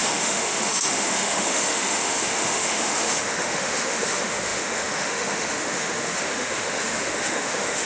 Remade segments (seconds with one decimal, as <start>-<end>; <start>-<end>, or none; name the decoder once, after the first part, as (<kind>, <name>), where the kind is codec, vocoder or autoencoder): 0.0-7.9 (autoencoder, DAC-VAE)